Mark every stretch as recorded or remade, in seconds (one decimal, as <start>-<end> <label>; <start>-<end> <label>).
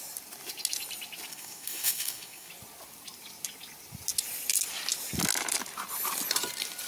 0.0-1.3 recorded; 1.3-2.5 remade; 2.5-6.9 recorded